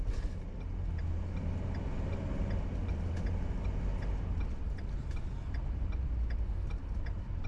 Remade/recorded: recorded